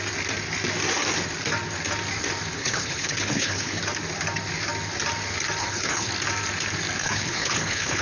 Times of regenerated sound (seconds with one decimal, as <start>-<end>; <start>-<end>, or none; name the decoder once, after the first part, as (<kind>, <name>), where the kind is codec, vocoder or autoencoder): 2.6-3.8 (codec, HILCodec); 5.6-6.1; 7.0-8.0